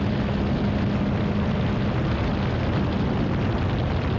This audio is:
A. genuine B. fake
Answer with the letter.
A